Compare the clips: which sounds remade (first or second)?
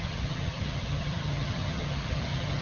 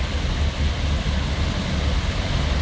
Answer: first